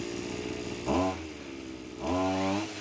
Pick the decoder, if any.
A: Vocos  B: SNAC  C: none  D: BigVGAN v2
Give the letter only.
C